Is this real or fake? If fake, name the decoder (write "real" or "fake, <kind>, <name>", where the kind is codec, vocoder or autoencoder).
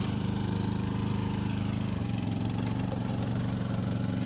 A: fake, vocoder, BigVGAN v2